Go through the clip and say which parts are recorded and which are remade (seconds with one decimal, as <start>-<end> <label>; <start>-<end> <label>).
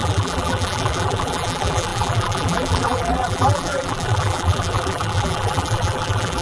0.0-6.4 remade